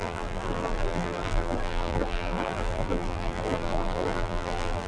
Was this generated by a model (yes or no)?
yes